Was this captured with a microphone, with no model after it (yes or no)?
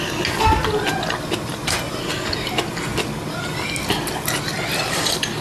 yes